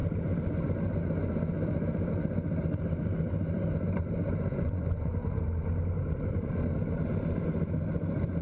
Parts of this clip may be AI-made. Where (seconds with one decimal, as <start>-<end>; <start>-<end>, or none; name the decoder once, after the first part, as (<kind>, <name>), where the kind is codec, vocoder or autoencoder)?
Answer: 4.5-5.1 (vocoder, Vocos)

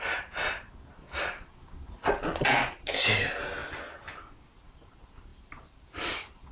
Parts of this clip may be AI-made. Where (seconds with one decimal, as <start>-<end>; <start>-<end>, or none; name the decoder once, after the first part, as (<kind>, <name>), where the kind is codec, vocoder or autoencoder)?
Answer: 1.0-1.7 (vocoder, BigVGAN v2); 3.6-4.1; 5.3-6.5

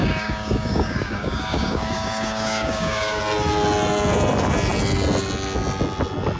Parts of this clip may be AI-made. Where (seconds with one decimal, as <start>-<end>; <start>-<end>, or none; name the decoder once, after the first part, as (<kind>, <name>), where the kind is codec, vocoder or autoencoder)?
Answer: 0.0-3.2 (codec, DAC)

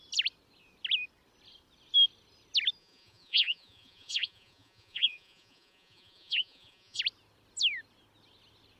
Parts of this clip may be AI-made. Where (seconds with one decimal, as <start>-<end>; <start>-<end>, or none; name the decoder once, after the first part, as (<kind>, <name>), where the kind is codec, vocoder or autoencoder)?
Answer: 2.8-7.0 (vocoder, Vocos)

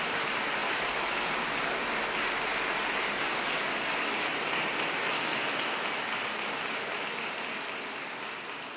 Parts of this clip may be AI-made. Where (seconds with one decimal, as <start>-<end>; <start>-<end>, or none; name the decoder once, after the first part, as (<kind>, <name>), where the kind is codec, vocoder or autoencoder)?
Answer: none